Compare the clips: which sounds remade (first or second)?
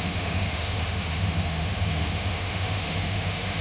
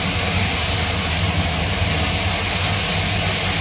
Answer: first